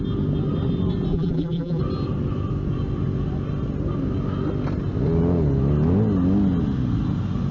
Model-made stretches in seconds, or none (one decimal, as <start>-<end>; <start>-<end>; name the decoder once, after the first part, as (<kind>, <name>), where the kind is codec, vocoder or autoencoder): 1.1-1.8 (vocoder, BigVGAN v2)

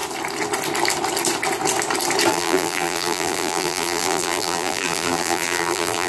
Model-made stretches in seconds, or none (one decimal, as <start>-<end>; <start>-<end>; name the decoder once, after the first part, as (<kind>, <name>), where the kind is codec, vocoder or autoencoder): 2.3-6.1 (vocoder, BigVGAN v2)

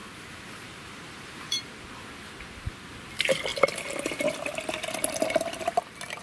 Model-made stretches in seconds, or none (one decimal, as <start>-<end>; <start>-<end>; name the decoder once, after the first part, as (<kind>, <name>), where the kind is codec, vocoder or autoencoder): 0.0-1.7 (vocoder, BigVGAN v2)

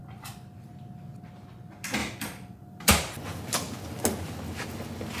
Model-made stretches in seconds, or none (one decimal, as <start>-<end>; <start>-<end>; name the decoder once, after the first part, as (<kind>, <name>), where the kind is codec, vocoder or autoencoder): 0.0-0.7 (vocoder, BigVGAN v2); 2.0-2.9